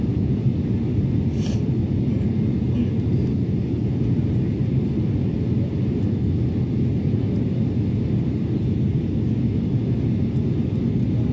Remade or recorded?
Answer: recorded